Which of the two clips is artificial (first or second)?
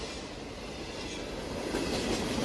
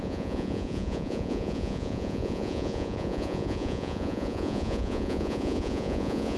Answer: second